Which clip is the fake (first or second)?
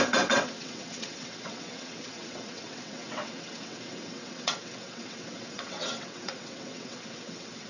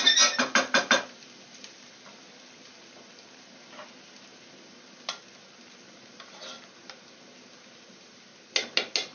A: first